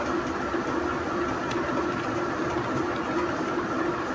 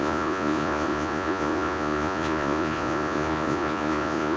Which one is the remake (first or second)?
second